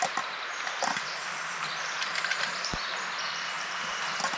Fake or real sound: real